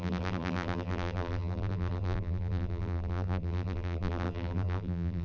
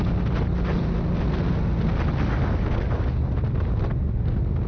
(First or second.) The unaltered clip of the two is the second